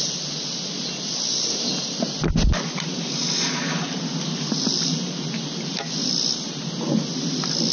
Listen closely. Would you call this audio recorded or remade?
recorded